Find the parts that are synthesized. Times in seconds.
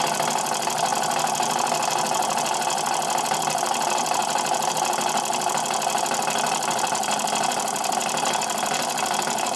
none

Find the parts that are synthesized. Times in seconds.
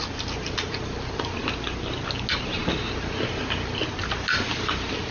none